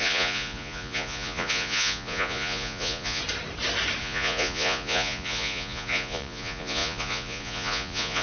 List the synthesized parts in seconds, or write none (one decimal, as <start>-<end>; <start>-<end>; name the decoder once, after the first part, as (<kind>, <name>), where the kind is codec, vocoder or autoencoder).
0.0-3.2 (vocoder, Vocos); 4.0-8.2